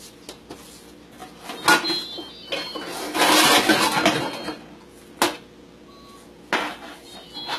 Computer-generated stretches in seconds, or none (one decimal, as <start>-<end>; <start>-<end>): none